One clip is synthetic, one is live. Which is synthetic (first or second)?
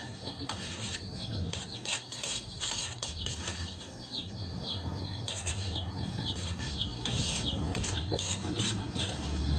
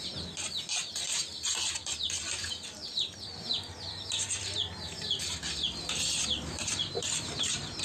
first